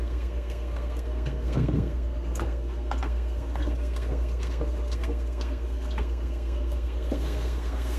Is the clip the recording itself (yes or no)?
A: no